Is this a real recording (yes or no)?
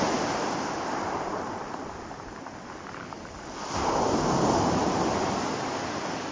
yes